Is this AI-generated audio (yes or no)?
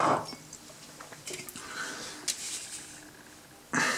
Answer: no